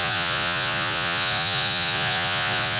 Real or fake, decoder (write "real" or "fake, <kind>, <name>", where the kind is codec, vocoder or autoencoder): fake, vocoder, Vocos